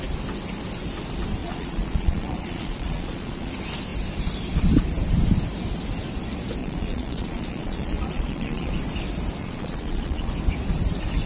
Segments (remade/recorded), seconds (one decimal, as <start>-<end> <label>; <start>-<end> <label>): 0.0-1.4 recorded; 1.4-3.5 remade; 3.5-6.6 recorded; 6.6-8.7 remade; 8.7-9.4 recorded; 9.4-10.3 remade; 10.3-11.3 recorded